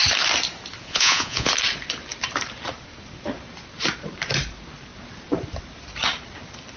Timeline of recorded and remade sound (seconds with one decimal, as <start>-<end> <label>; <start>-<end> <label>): 0.0-0.8 recorded; 0.8-1.5 remade; 1.5-6.8 recorded